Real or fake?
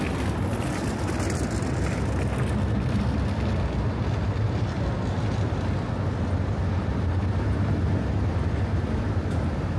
real